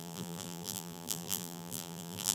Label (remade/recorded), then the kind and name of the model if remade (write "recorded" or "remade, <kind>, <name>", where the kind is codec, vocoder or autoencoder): remade, vocoder, BigVGAN v2